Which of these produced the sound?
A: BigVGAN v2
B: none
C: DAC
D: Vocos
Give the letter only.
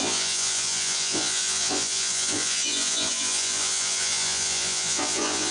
D